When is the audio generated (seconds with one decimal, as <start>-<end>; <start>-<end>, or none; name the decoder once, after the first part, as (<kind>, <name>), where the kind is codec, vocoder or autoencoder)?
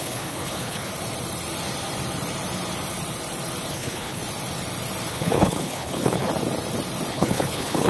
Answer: 0.0-0.9 (codec, HILCodec); 3.7-4.2; 5.1-6.3; 7.1-7.9